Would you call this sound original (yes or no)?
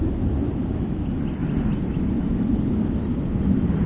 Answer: yes